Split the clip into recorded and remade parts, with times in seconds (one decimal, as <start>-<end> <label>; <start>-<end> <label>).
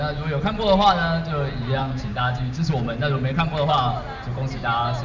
0.0-1.8 recorded; 1.8-2.7 remade; 2.7-5.0 recorded